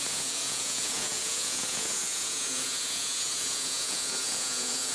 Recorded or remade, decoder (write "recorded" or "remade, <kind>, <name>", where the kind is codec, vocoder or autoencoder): remade, vocoder, Vocos